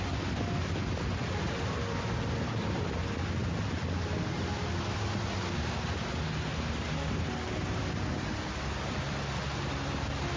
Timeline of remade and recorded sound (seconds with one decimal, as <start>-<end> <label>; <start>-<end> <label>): 0.0-10.4 recorded

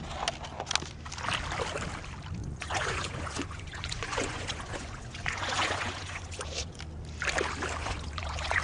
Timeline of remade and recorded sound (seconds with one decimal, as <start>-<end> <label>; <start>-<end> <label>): 0.0-2.4 recorded; 2.4-6.8 remade; 6.8-7.8 recorded; 7.8-8.6 remade

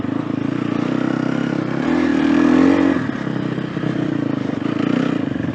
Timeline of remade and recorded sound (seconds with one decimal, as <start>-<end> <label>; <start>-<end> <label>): 0.0-5.5 recorded

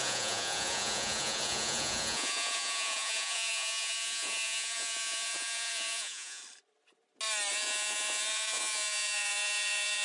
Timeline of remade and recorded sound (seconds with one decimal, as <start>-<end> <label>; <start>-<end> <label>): 0.0-6.4 remade; 6.4-7.5 recorded; 7.5-10.0 remade